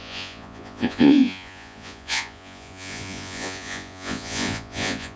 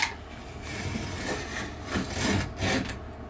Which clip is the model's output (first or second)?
first